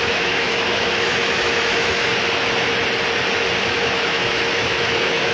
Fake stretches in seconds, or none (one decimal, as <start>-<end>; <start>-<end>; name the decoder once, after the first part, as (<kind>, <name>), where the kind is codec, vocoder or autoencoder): 0.0-2.1 (autoencoder, DAC-VAE); 3.6-5.3